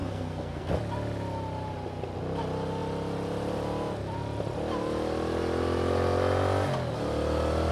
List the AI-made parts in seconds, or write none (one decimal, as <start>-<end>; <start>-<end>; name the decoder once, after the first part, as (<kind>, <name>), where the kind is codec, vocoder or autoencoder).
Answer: 0.0-0.7 (codec, SNAC)